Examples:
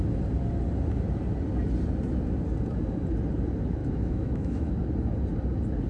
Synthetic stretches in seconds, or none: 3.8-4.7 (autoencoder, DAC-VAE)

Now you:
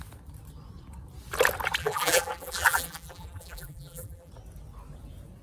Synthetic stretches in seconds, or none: 1.8-4.3 (vocoder, BigVGAN v2)

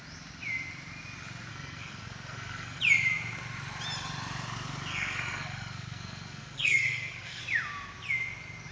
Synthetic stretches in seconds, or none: 1.5-2.8 (codec, SNAC); 4.9-7.4

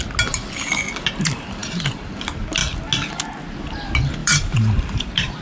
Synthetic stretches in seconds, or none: 4.2-5.4 (vocoder, BigVGAN v2)

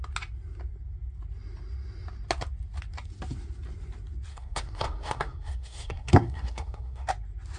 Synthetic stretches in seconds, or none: 4.3-7.1 (codec, SNAC)

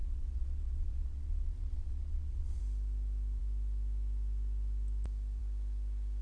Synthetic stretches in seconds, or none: 0.0-2.6 (vocoder, Vocos)

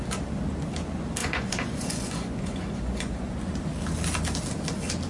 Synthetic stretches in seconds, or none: 1.2-3.6 (vocoder, Vocos)